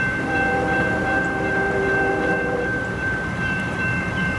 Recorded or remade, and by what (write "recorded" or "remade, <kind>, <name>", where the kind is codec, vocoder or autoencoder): remade, vocoder, BigVGAN v2